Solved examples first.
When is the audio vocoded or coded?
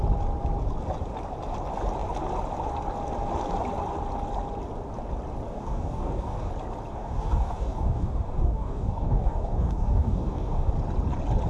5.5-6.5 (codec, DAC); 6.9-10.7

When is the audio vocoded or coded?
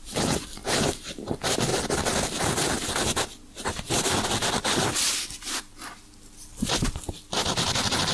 4.4-5.7 (vocoder, BigVGAN v2); 6.5-7.1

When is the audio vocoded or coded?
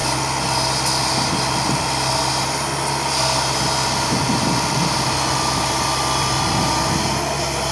none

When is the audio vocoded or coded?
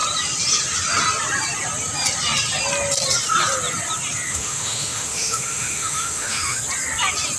4.3-6.6 (autoencoder, DAC-VAE)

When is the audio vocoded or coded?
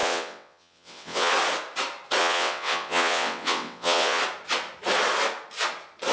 0.0-1.3 (vocoder, WaveNeXt); 2.2-4.2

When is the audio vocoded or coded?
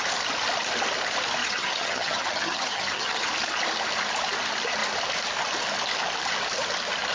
1.4-3.3 (vocoder, HiFi-GAN)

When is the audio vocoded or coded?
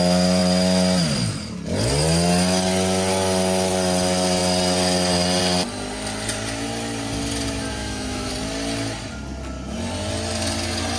7.8-8.3 (autoencoder, DAC-VAE)